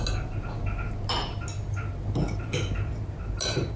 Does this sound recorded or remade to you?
recorded